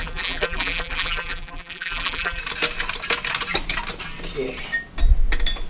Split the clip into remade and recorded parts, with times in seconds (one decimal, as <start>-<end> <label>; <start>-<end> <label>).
0.0-2.4 remade; 2.4-5.7 recorded